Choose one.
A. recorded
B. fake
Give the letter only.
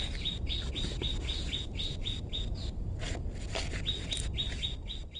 A